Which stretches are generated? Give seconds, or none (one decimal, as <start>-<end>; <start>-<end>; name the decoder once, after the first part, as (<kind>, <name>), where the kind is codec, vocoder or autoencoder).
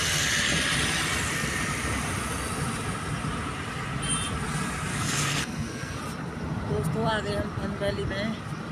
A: 4.9-6.0 (codec, SNAC)